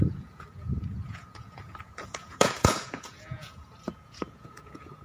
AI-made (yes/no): yes